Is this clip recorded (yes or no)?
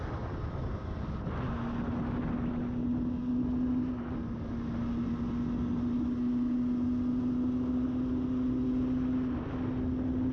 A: yes